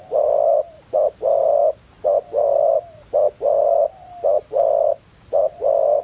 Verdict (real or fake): real